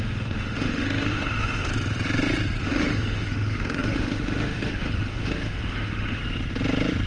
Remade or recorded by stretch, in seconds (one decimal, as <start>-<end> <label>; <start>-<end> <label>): 0.0-1.7 remade; 1.7-2.6 recorded; 2.6-6.2 remade; 6.2-7.1 recorded